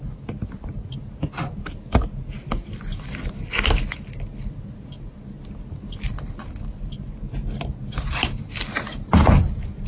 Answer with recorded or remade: recorded